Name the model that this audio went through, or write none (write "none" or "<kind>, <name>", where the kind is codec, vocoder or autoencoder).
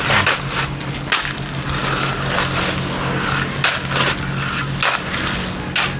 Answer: none